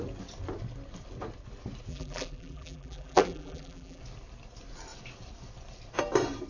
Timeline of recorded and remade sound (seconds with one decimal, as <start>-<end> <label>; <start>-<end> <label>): 0.0-1.9 recorded; 1.9-4.0 remade; 4.0-6.5 recorded